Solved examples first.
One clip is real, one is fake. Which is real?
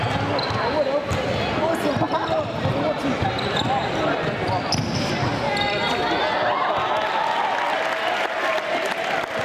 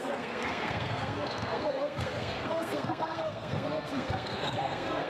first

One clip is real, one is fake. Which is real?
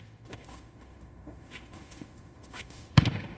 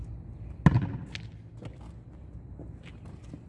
second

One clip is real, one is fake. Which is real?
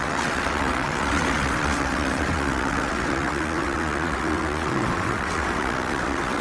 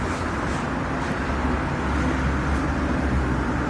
second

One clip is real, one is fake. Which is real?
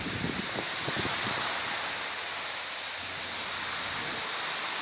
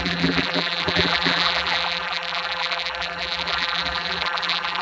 first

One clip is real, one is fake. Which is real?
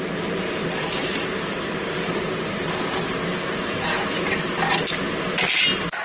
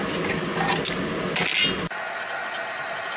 second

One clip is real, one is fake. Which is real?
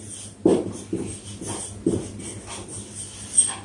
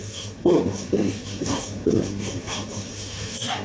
first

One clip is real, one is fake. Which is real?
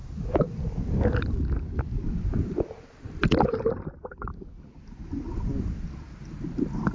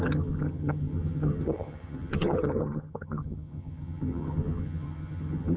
first